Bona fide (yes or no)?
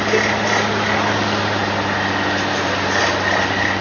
yes